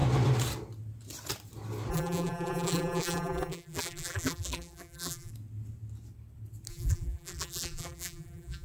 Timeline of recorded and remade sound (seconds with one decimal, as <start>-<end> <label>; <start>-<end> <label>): 0.0-1.9 recorded; 1.9-5.3 remade; 5.3-6.7 recorded; 6.7-8.6 remade